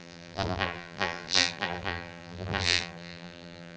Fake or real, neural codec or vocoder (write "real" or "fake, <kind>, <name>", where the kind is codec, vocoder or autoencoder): fake, vocoder, BigVGAN v2